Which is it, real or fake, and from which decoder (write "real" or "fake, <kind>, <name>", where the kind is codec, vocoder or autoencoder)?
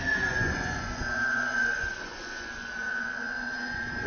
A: fake, vocoder, Vocos